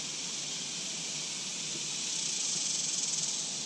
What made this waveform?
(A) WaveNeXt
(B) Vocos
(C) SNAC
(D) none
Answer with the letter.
D